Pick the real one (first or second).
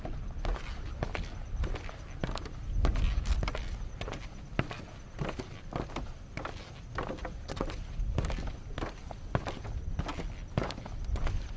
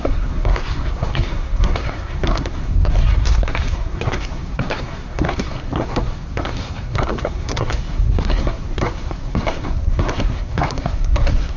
first